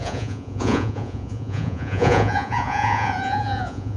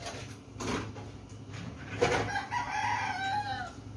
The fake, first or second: first